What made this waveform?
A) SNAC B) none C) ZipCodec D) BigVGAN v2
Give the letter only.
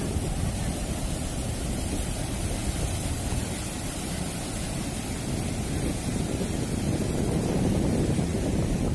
B